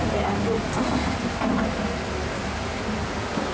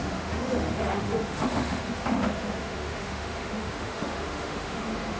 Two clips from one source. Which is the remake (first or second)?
second